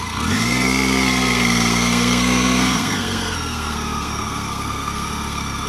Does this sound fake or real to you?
fake